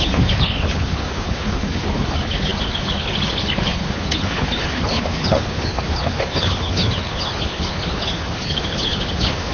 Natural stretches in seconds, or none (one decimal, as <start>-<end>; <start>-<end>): none

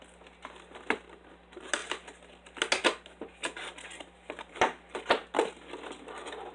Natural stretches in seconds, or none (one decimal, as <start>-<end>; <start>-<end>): 0.0-6.5

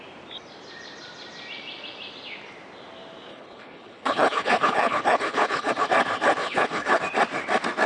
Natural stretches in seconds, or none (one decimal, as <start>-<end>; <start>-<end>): 0.0-3.3; 5.7-6.4; 7.0-7.9

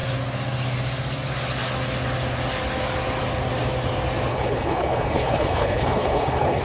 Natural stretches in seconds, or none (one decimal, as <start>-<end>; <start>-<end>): 0.0-4.3

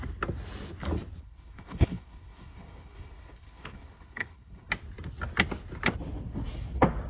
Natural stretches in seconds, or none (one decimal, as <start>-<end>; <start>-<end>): 0.0-1.2; 4.7-7.1